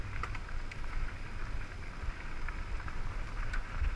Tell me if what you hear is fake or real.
real